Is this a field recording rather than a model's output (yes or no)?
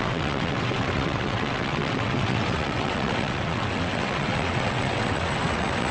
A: no